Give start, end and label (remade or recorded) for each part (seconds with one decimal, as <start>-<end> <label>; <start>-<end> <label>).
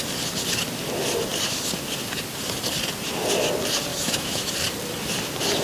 0.0-3.9 recorded; 3.9-4.5 remade; 4.5-5.6 recorded